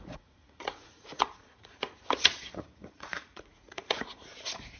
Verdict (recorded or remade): remade